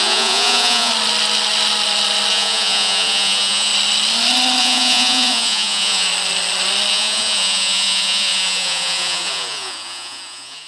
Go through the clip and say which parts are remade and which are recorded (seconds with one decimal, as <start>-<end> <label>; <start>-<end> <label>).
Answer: 0.0-0.9 remade; 0.9-2.3 recorded; 2.3-3.7 remade; 3.7-4.6 recorded; 4.6-6.1 remade; 6.1-6.9 recorded; 6.9-10.7 remade